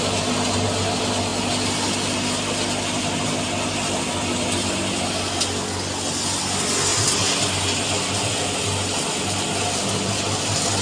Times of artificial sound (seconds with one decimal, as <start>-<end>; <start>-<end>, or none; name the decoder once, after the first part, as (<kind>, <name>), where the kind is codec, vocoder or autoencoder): none